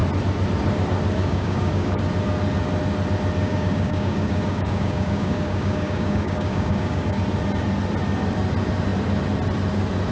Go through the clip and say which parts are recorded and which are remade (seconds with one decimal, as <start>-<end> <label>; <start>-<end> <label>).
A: 0.0-1.2 recorded; 1.2-2.0 remade; 2.0-3.4 recorded; 3.4-7.2 remade; 7.2-10.1 recorded